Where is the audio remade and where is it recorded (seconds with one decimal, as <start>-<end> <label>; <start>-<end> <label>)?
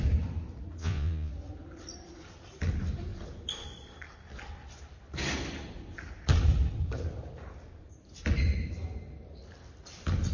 0.0-0.8 recorded; 0.8-1.3 remade; 1.3-10.3 recorded